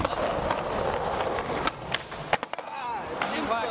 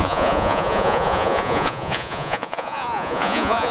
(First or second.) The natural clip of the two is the first